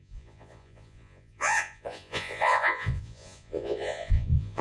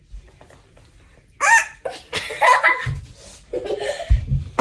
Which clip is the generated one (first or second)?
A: first